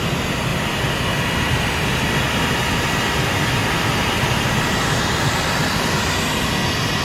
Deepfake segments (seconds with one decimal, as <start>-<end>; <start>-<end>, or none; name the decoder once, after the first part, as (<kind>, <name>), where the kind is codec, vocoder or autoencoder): none